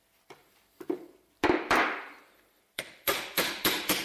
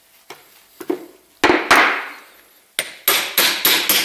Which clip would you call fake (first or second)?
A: first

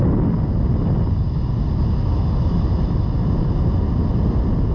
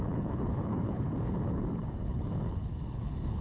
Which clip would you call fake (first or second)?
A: second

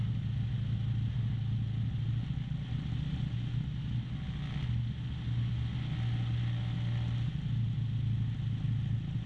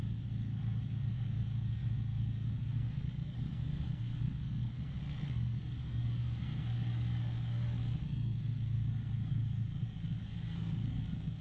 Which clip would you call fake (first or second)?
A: second